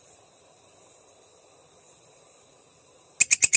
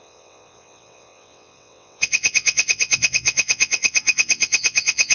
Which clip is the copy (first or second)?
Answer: second